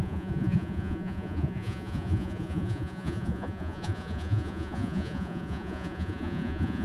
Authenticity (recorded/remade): remade